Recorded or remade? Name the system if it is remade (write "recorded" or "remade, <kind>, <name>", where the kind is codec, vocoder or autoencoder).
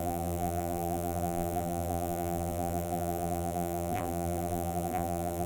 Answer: remade, vocoder, BigVGAN v2